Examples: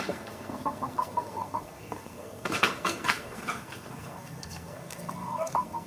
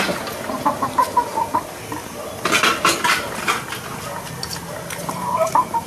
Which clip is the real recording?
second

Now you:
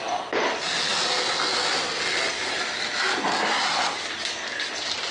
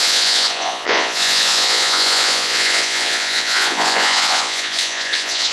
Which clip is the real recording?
first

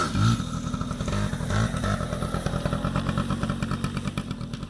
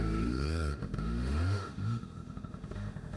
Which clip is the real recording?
first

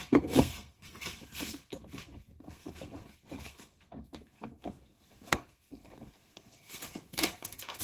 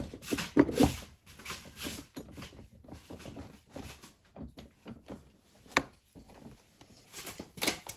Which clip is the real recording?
second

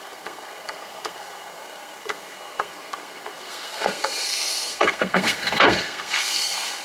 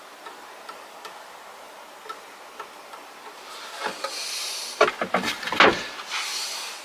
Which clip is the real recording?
second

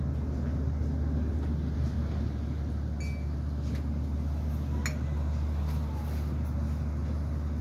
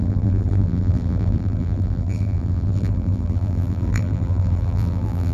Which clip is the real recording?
first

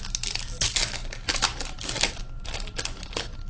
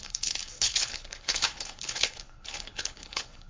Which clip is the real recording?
first